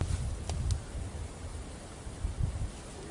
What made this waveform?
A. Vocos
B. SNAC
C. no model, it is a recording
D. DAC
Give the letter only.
C